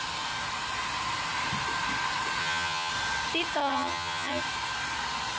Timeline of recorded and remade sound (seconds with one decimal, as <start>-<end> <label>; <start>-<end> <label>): 0.0-2.4 recorded; 2.4-2.9 remade; 2.9-3.6 recorded; 3.6-4.4 remade; 4.4-5.4 recorded